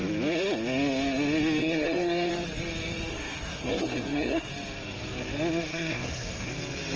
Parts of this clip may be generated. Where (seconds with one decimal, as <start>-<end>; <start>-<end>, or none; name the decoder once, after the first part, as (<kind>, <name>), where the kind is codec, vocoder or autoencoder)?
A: 1.6-2.3 (codec, SNAC); 3.1-4.5; 5.7-6.5